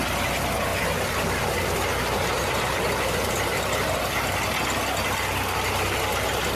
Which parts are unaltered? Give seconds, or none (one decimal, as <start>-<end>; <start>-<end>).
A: 0.0-6.6

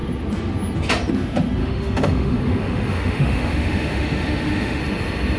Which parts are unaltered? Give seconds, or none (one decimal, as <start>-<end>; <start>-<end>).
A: 0.0-1.6; 4.8-5.4

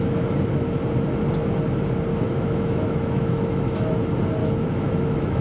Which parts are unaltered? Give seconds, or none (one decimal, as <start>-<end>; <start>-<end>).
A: 0.0-2.1; 4.0-4.4

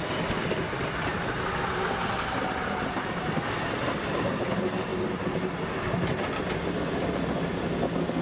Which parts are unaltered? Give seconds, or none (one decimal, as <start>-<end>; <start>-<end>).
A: 0.0-8.2